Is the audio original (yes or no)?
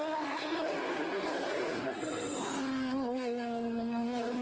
no